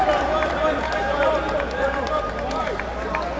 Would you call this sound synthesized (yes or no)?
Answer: yes